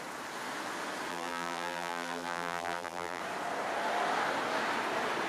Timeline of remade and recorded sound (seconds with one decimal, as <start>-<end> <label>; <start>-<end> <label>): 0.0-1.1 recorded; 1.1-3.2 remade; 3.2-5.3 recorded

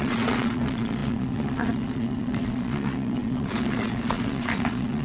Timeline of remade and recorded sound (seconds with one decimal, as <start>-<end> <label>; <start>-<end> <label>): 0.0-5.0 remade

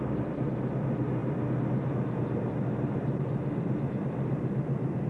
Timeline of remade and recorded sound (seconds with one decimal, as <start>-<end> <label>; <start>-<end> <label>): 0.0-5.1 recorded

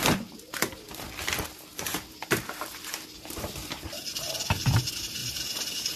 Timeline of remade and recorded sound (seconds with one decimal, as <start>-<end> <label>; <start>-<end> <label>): 0.0-1.7 recorded; 1.7-4.8 remade; 4.8-5.2 recorded; 5.2-6.0 remade